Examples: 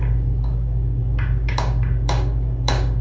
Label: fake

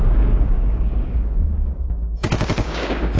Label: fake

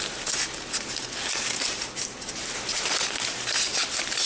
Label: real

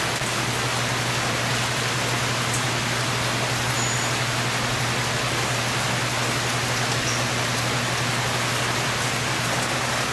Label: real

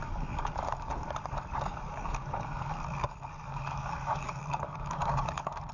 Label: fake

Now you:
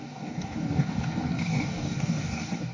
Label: fake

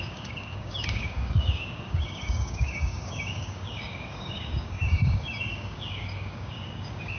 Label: fake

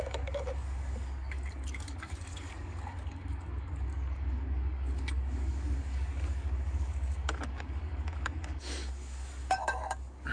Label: fake